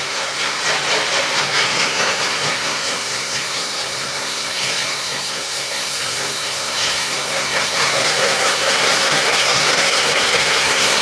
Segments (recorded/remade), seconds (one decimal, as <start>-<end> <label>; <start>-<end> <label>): 0.0-0.6 remade; 0.6-1.4 recorded; 1.4-11.0 remade